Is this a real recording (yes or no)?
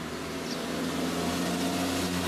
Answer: yes